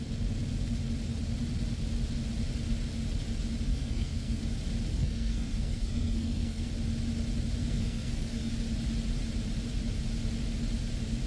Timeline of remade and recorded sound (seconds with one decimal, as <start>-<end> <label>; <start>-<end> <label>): 0.0-3.7 recorded; 3.7-4.4 remade; 4.4-4.9 recorded; 4.9-6.7 remade; 6.7-7.6 recorded; 7.6-8.5 remade; 8.5-11.3 recorded